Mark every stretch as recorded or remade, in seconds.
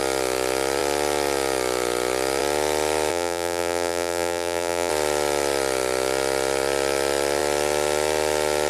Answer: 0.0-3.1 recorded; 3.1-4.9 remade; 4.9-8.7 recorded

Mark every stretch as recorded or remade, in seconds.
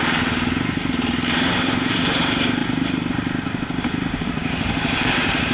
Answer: 0.0-5.5 remade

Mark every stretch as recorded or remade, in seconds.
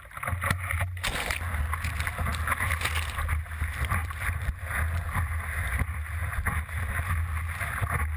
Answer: 0.0-2.3 recorded; 2.3-3.2 remade; 3.2-4.0 recorded; 4.0-4.6 remade; 4.6-8.2 recorded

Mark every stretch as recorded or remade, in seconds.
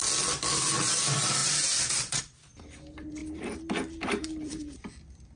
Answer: 0.0-1.4 recorded; 1.4-2.2 remade; 2.2-3.2 recorded; 3.2-4.9 remade; 4.9-5.4 recorded